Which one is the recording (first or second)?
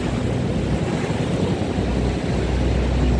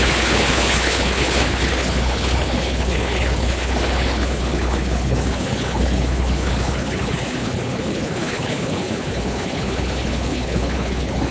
first